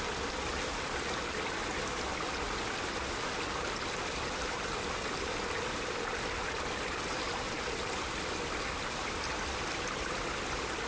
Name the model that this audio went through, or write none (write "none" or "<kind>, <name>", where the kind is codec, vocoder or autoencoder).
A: none